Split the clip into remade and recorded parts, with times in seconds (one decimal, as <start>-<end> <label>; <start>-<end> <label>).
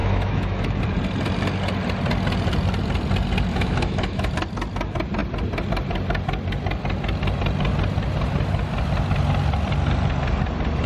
0.0-0.8 remade; 0.8-3.5 recorded; 3.5-4.3 remade; 4.3-10.9 recorded